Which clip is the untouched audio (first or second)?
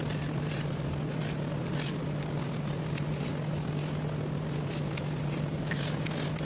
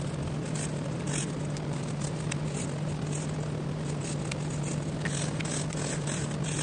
first